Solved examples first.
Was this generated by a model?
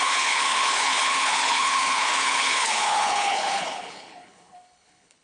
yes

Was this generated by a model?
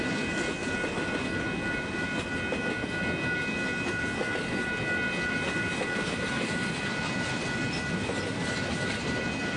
no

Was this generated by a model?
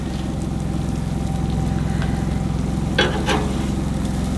no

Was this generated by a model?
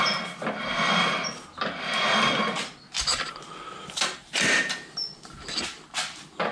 no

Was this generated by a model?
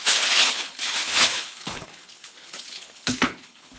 yes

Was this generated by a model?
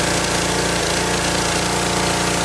no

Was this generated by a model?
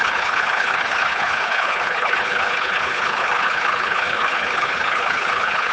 yes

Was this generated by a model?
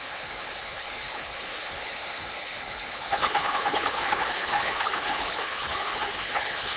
yes